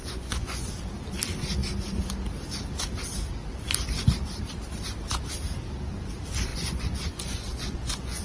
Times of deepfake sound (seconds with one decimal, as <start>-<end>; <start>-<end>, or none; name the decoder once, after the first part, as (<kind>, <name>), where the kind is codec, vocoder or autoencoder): 0.0-0.7 (vocoder, Vocos); 6.5-8.2